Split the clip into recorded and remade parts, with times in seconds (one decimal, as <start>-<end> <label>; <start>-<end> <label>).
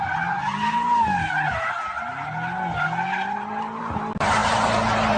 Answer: 0.0-5.2 recorded